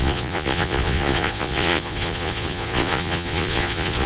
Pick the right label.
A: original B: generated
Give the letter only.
B